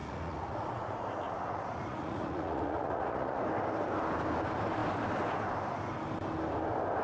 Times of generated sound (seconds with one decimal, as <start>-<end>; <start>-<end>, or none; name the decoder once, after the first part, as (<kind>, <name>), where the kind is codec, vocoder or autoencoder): 0.0-3.4 (vocoder, Vocos)